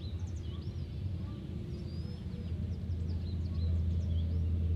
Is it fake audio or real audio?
real